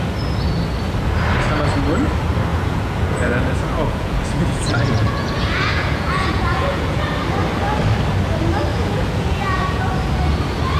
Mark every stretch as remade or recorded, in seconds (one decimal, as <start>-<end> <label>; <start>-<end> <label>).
0.0-2.5 recorded; 2.5-7.0 remade; 7.0-8.7 recorded; 8.7-9.8 remade; 9.8-10.8 recorded